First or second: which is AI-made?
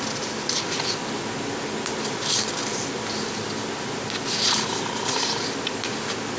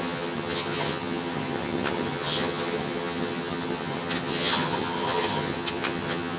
second